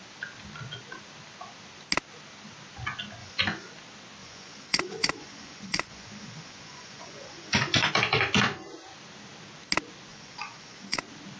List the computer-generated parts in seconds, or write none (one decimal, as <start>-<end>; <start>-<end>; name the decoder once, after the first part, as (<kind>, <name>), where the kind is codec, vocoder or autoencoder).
3.2-3.7 (vocoder, Vocos); 4.2-7.9; 10.1-11.0